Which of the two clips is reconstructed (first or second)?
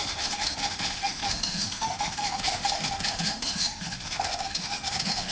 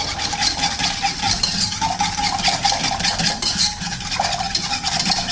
first